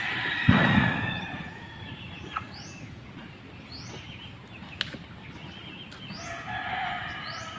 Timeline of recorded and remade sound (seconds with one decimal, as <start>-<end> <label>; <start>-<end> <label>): 0.0-3.3 remade; 3.3-7.6 recorded